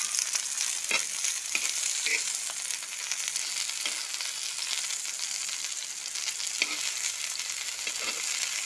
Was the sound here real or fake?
real